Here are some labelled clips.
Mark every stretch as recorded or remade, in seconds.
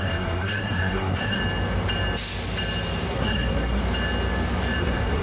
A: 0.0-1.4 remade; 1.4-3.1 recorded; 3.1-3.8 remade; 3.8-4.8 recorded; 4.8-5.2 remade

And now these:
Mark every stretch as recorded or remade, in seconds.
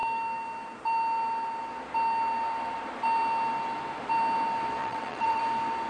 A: 0.0-4.8 recorded; 4.8-5.4 remade; 5.4-5.9 recorded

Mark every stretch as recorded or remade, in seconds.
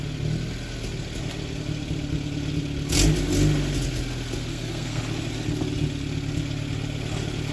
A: 0.0-4.5 recorded; 4.5-5.0 remade; 5.0-7.5 recorded